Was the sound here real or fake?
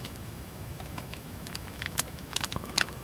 fake